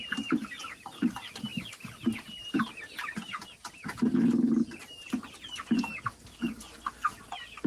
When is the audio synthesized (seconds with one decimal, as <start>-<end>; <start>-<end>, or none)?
none